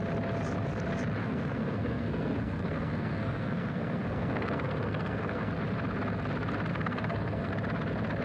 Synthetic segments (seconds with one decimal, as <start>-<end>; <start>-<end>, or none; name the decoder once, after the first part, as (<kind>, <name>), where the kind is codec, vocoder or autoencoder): 1.2-5.5 (codec, SNAC); 6.7-7.5